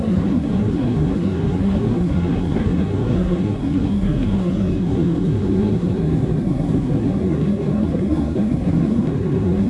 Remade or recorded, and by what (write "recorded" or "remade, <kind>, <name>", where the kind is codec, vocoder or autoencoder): remade, codec, SNAC